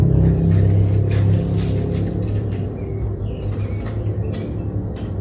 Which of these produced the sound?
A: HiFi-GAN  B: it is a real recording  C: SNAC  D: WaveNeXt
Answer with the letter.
B